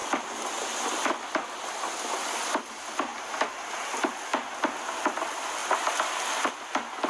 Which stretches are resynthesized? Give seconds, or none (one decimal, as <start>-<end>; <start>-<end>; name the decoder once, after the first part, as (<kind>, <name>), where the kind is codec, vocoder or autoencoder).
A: 1.7-3.1 (vocoder, BigVGAN v2); 3.7-4.3; 5.1-7.1